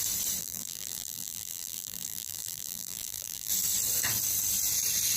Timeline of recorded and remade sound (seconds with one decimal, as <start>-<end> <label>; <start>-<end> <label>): 0.0-0.4 recorded; 0.4-3.5 remade; 3.5-5.2 recorded